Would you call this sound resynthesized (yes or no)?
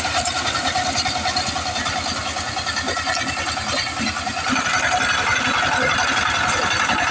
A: no